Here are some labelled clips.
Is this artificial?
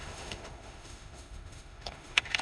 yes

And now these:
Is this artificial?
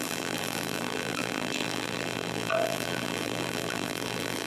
yes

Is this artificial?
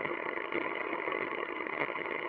yes